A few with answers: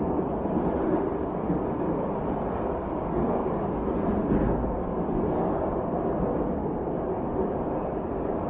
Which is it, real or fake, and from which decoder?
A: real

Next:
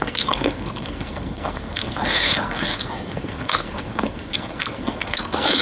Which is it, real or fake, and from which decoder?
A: fake, codec, SNAC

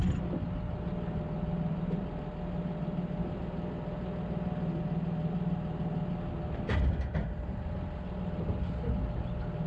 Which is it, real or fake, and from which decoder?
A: real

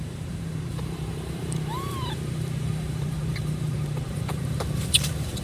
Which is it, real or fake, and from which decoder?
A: fake, vocoder, BigVGAN v2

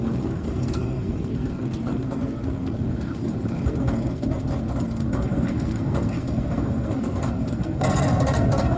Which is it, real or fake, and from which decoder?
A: fake, codec, SNAC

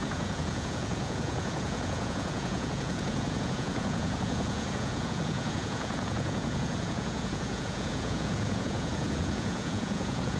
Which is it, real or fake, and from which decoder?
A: fake, vocoder, Vocos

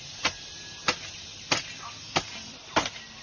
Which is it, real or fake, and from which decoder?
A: real